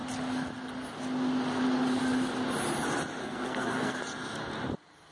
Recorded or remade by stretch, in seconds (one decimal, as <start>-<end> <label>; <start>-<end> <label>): 0.0-3.2 recorded; 3.2-4.0 remade; 4.0-5.1 recorded